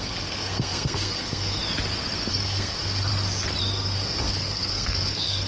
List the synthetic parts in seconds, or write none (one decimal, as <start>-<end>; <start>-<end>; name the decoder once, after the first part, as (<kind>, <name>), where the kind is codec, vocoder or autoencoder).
0.0-1.6 (codec, SNAC); 2.3-3.1; 3.6-5.5